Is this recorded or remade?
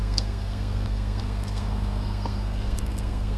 remade